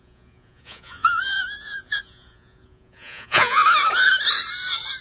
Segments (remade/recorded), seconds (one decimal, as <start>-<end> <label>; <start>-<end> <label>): 0.0-3.6 remade; 3.6-5.0 recorded